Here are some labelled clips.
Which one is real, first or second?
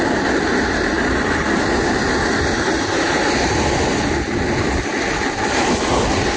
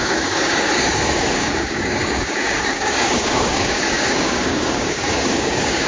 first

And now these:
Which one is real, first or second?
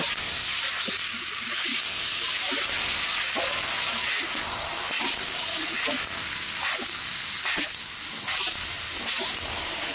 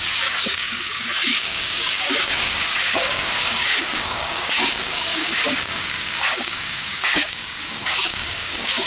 first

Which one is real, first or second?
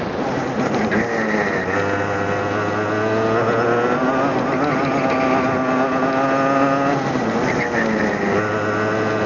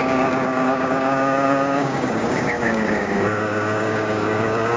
first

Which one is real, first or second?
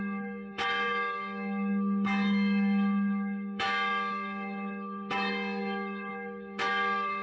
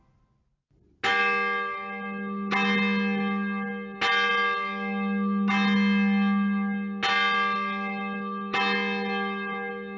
second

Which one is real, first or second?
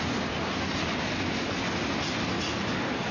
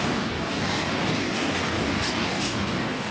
first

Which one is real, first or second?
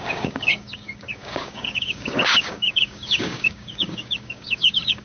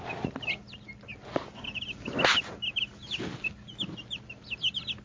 second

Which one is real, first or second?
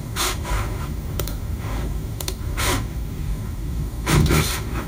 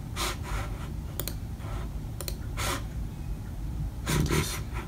second